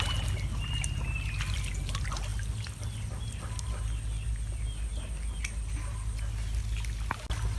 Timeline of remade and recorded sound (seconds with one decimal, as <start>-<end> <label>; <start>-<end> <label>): 0.0-7.6 recorded